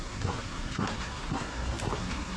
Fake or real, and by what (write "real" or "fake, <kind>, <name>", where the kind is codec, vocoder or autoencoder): fake, codec, SNAC